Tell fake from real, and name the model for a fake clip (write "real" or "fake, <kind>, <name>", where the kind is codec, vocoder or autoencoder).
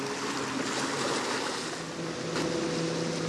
real